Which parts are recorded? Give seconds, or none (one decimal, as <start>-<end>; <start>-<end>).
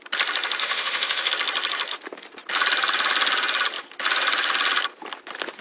0.0-0.6; 1.3-5.6